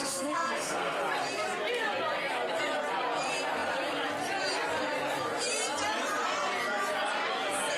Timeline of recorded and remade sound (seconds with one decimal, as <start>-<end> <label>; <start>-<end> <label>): 0.0-1.0 remade; 1.0-7.8 recorded